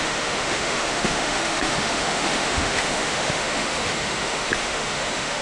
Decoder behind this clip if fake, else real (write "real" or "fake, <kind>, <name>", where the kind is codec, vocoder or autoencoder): fake, autoencoder, DAC-VAE